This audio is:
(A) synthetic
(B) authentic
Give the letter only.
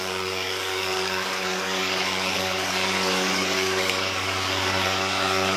A